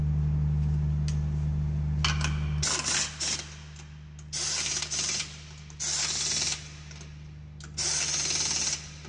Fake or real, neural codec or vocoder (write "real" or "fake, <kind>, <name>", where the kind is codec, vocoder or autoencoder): real